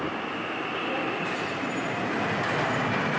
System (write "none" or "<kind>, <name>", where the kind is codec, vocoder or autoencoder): none